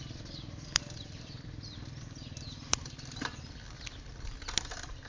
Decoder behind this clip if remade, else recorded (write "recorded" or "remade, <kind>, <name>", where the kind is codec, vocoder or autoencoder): remade, vocoder, BigVGAN v2